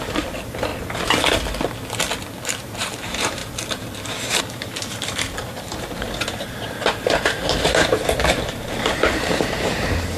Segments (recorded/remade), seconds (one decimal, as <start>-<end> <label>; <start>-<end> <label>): 0.0-0.7 remade; 0.7-2.6 recorded; 2.6-3.4 remade; 3.4-4.4 recorded; 4.4-10.2 remade